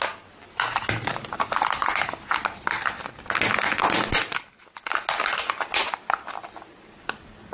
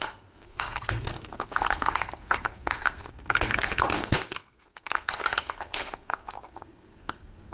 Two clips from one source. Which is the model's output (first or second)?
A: second